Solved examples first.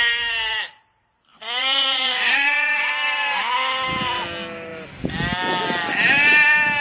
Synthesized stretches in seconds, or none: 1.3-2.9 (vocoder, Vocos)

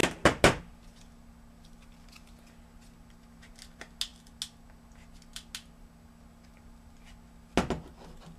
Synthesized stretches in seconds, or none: none

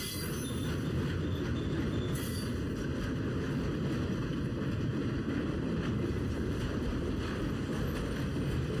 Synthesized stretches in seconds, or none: 4.3-7.4 (vocoder, BigVGAN v2)

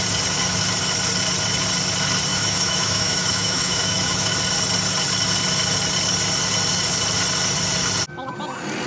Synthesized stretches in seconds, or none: 2.3-4.3 (autoencoder, DAC-VAE)

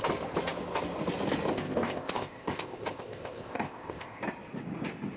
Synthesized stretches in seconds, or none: 1.5-4.2 (codec, ZipCodec)

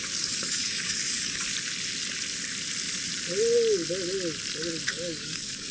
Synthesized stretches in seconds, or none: 0.0-1.5 (codec, DAC); 4.9-5.7

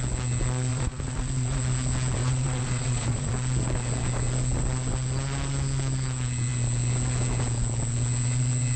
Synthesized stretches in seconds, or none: 0.7-1.6 (vocoder, Vocos); 2.2-3.3

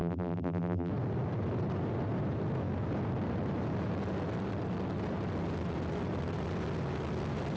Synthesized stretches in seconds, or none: 0.0-0.9 (vocoder, BigVGAN v2)